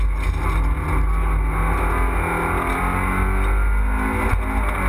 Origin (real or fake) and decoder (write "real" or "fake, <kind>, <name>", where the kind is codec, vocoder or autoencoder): real